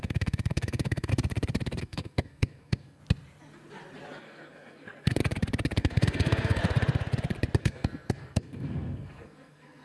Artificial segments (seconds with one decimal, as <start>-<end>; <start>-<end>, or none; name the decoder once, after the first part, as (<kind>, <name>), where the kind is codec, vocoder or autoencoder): 0.0-1.1 (codec, SNAC); 1.8-3.0; 4.2-5.2; 5.8-6.6; 7.6-9.8